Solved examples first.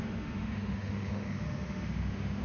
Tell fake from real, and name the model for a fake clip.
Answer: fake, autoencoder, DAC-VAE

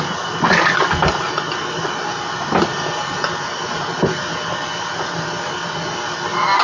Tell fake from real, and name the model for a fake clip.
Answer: real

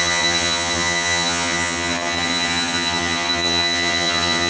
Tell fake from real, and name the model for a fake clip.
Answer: fake, vocoder, HiFi-GAN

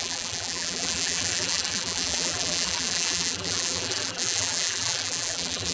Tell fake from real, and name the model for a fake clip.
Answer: fake, vocoder, BigVGAN v2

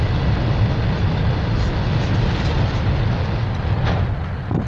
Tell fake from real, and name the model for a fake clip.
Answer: real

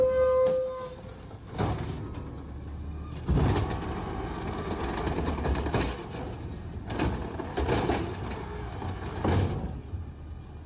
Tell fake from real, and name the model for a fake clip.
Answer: real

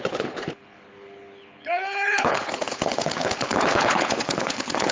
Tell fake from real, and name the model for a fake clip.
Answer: fake, codec, HILCodec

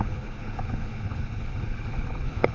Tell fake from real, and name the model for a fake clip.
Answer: fake, codec, HILCodec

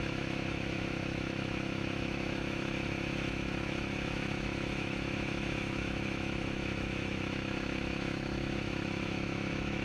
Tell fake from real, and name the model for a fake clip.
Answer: fake, autoencoder, DAC-VAE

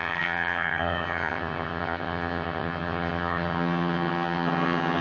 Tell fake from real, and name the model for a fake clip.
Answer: fake, vocoder, HiFi-GAN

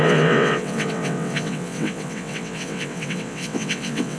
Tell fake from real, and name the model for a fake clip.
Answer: fake, vocoder, WaveNeXt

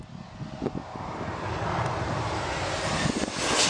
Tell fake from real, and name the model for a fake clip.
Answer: real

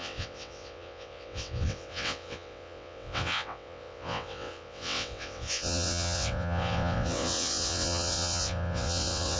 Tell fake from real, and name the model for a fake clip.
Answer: fake, vocoder, WaveNeXt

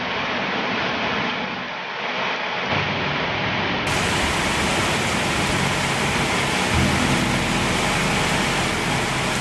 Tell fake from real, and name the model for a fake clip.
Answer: real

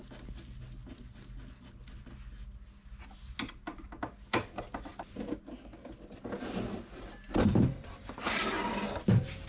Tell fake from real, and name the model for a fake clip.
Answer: real